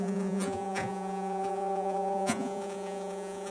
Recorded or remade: remade